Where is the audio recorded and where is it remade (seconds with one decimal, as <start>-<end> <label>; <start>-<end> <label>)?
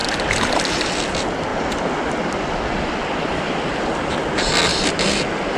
0.0-5.6 recorded